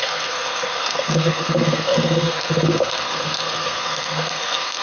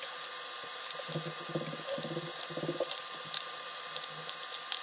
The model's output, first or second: first